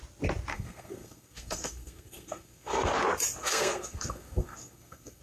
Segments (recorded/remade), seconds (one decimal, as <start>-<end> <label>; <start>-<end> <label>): 0.0-0.5 recorded; 0.5-2.9 remade; 2.9-3.4 recorded; 3.4-5.2 remade